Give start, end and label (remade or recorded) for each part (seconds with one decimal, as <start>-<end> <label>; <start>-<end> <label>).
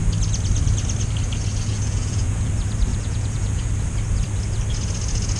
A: 0.0-1.7 recorded; 1.7-2.5 remade; 2.5-2.9 recorded; 2.9-3.7 remade; 3.7-5.4 recorded